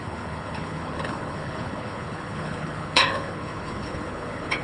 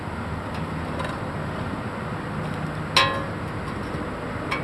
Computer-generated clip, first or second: first